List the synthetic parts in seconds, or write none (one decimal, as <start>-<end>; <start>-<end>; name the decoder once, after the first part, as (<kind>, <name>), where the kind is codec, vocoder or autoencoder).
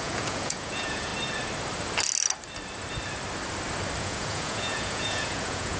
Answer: 0.0-1.1 (vocoder, Vocos); 4.0-5.8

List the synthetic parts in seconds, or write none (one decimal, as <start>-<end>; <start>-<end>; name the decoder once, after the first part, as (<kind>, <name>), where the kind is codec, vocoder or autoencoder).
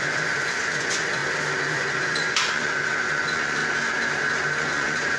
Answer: 0.0-1.2 (vocoder, Vocos); 1.7-3.6; 4.6-5.2